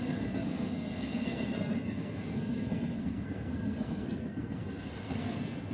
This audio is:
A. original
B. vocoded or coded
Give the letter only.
B